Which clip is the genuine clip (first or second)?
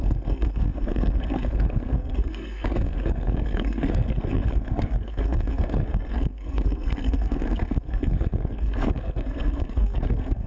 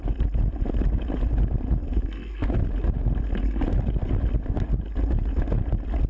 second